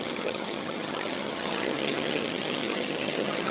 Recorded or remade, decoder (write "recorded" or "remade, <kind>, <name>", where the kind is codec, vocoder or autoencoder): remade, vocoder, HiFi-GAN